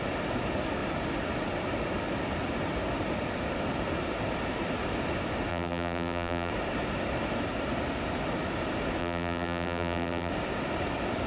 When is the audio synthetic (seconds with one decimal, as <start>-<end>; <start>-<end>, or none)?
5.5-6.5; 9.0-10.3